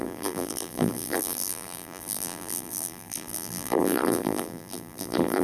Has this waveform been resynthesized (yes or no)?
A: yes